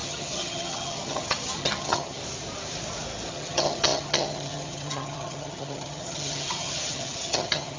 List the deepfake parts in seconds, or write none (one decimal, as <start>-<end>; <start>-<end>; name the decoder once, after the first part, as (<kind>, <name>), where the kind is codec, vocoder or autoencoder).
0.0-2.2 (vocoder, HiFi-GAN); 3.3-7.8